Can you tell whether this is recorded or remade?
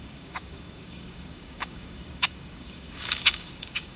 remade